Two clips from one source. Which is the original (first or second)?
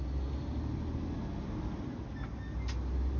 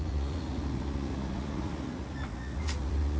first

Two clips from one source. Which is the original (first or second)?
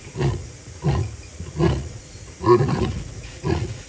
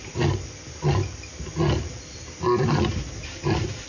second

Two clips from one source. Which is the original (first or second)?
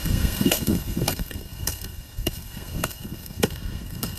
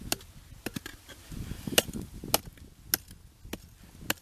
second